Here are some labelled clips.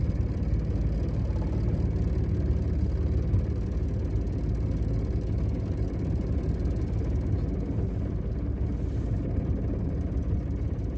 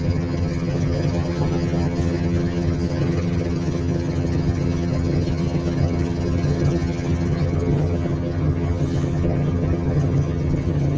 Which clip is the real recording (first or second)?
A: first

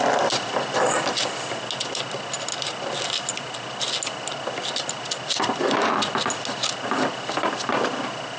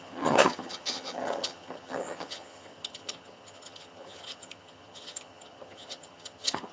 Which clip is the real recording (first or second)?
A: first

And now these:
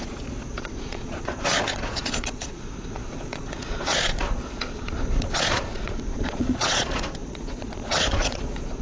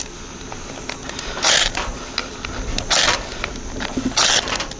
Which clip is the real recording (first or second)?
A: second